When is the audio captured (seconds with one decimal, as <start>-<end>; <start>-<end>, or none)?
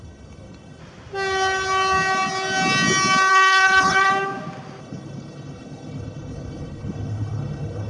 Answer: 0.8-3.3; 4.1-4.8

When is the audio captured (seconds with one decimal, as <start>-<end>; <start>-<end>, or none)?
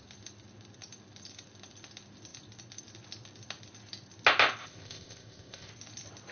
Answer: 0.0-4.6; 5.7-6.3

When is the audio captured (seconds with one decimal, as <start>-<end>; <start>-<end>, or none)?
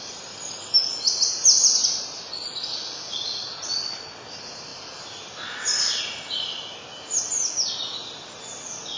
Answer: 0.0-9.0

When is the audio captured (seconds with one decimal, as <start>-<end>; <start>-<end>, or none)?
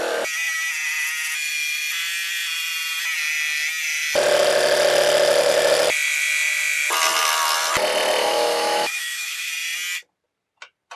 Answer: 0.0-8.2; 9.5-11.0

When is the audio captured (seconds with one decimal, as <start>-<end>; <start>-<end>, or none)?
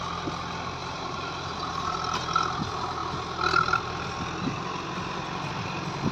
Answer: 0.0-0.8; 1.7-6.1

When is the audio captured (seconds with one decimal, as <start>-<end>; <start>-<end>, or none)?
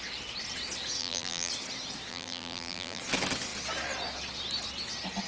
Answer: 0.0-1.0; 1.5-2.1; 3.0-5.3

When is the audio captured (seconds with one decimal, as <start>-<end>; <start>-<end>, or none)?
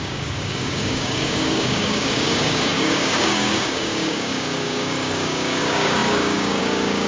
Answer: none